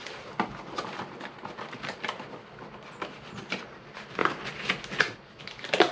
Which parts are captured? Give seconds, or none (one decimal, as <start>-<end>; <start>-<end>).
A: 0.0-5.9